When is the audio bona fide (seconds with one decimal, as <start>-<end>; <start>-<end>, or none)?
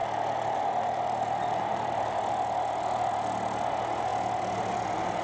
0.0-1.7; 3.1-5.2